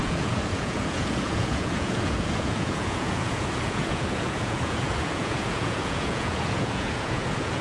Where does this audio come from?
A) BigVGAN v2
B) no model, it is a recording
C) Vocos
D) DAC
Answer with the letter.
C